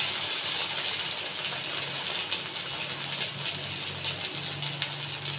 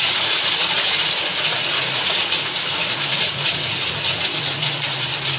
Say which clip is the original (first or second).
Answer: first